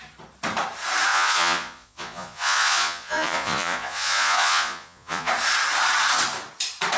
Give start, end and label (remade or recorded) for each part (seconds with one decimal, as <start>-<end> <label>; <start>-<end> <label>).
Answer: 0.0-1.1 recorded; 1.1-5.3 remade; 5.3-7.0 recorded